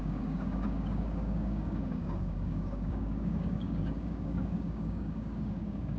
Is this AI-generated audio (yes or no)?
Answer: yes